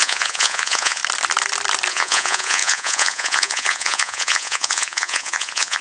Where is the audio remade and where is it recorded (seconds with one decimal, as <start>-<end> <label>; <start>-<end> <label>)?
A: 0.0-1.0 remade; 1.0-1.9 recorded; 1.9-5.8 remade